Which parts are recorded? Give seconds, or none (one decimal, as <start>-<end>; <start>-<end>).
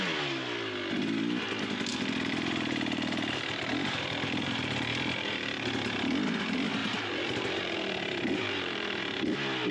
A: 0.0-1.9; 5.7-6.8; 9.0-9.7